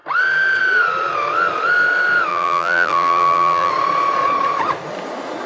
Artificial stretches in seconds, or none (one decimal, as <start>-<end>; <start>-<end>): 2.3-3.7